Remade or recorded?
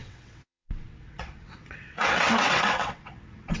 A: remade